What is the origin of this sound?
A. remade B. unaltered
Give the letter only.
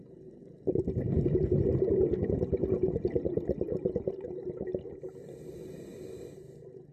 B